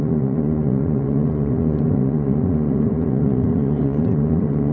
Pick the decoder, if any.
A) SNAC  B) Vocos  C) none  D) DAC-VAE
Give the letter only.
B